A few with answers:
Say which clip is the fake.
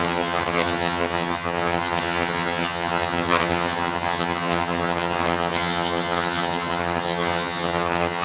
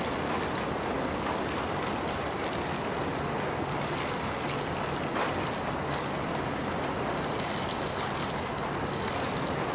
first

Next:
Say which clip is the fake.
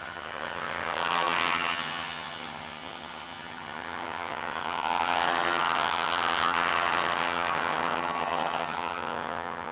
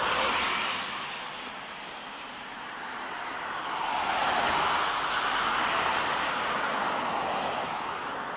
first